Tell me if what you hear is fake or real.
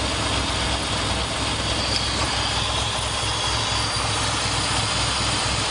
real